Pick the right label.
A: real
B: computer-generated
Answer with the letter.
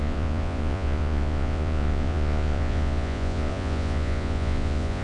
B